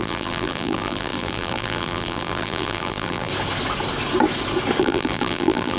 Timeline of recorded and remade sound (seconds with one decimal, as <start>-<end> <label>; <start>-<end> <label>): 0.0-3.3 remade; 3.3-4.8 recorded; 4.8-5.8 remade